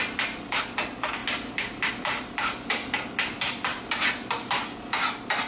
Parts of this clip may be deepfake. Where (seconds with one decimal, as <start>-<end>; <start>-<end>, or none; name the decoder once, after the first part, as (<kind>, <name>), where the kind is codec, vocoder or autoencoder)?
none